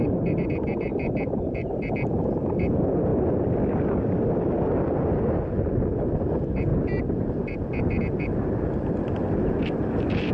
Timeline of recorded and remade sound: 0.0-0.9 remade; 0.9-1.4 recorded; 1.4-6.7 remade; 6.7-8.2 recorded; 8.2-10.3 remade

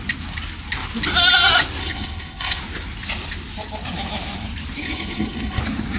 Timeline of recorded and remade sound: 0.0-1.8 recorded; 1.8-2.6 remade; 2.6-4.8 recorded; 4.8-5.6 remade; 5.6-6.0 recorded

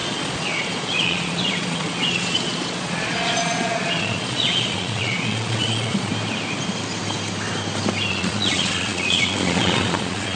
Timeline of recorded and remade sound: 0.0-6.1 remade; 6.1-8.1 recorded; 8.1-10.4 remade

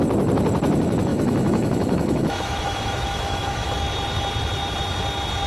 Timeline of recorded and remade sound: 0.0-1.1 recorded; 1.1-3.7 remade; 3.7-5.5 recorded

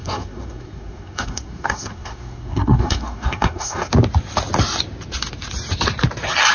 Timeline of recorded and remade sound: 0.0-3.9 remade; 3.9-6.5 recorded

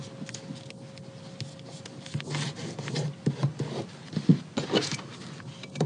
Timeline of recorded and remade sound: 0.0-5.9 recorded

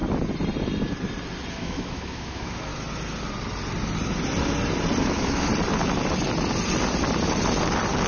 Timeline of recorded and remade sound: 0.0-1.5 recorded; 1.5-2.7 remade; 2.7-5.0 recorded; 5.0-5.5 remade; 5.5-8.1 recorded